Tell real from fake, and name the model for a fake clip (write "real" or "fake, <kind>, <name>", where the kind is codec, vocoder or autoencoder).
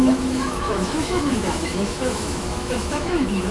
fake, autoencoder, DAC-VAE